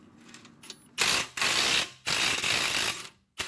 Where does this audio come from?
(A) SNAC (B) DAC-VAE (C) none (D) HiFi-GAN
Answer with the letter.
C